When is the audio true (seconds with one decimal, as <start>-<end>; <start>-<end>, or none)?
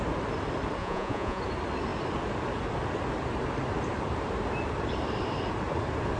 0.0-0.8; 1.4-6.2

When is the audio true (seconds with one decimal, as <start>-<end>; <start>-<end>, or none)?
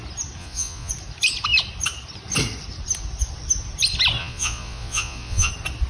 0.0-0.4; 0.9-4.2; 5.5-5.9